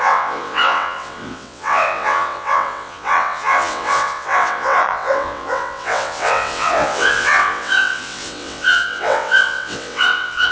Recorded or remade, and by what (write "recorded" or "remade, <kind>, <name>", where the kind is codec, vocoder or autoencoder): remade, vocoder, WaveNeXt